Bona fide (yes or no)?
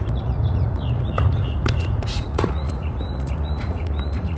no